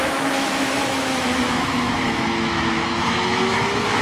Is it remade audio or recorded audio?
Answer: remade